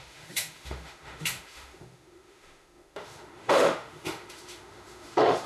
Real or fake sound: fake